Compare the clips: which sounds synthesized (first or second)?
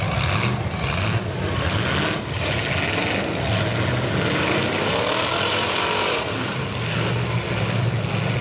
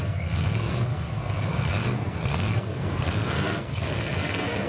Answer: second